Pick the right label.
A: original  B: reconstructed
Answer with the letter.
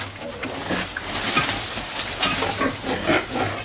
A